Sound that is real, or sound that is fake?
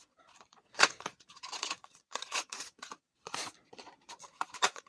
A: fake